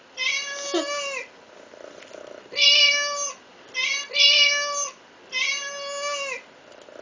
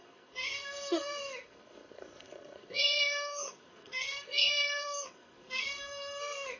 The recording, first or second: first